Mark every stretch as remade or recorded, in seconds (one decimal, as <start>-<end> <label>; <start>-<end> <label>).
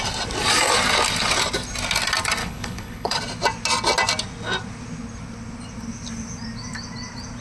0.0-2.4 recorded; 2.4-3.2 remade; 3.2-7.4 recorded